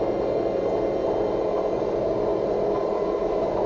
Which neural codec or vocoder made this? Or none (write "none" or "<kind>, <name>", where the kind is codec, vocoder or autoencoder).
none